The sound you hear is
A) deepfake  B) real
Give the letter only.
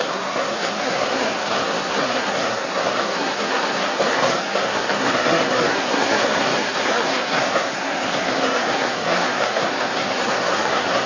A